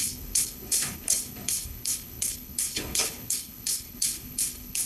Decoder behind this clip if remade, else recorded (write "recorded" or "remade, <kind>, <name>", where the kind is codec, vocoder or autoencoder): remade, codec, HILCodec